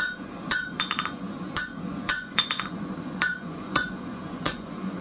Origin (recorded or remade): remade